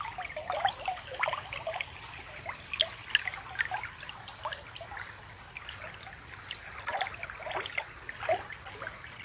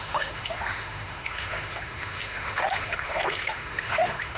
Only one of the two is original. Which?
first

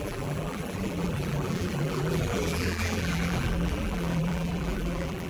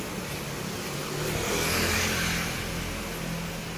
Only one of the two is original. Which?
second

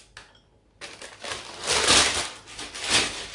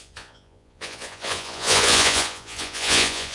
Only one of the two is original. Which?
first